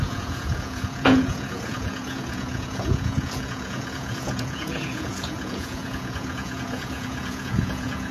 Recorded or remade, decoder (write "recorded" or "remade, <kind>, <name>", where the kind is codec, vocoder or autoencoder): remade, vocoder, Vocos